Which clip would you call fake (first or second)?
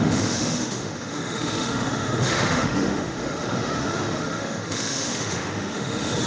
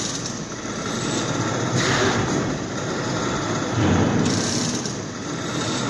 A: first